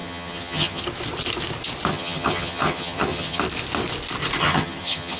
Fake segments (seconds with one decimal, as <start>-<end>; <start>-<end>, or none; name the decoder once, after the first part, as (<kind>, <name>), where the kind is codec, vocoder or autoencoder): 0.0-0.8 (vocoder, HiFi-GAN); 1.9-3.4; 4.4-5.2